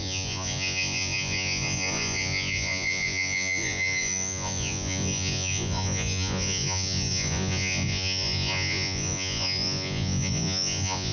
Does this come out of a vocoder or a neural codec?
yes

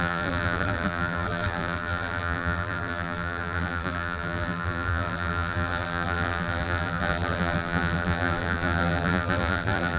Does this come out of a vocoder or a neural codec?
yes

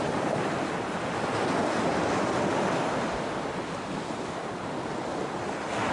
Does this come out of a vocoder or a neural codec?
no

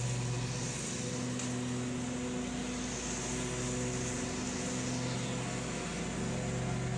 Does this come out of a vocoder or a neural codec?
no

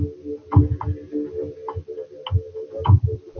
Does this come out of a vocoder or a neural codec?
no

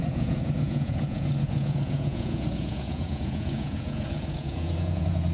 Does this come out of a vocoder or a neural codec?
yes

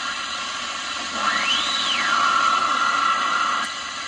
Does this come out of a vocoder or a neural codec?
yes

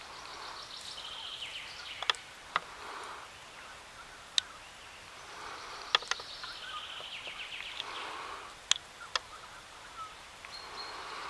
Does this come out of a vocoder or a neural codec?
no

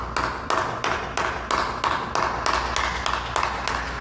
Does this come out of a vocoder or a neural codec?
no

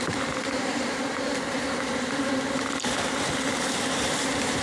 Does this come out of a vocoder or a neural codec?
yes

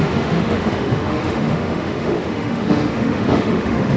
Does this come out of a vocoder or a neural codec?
yes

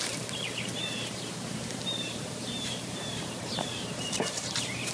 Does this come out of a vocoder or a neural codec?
yes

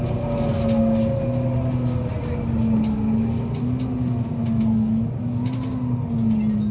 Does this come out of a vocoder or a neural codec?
no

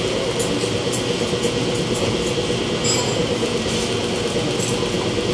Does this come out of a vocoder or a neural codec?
no